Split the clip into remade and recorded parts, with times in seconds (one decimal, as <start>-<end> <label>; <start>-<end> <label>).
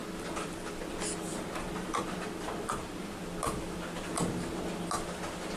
0.0-1.3 recorded; 1.3-2.6 remade; 2.6-5.6 recorded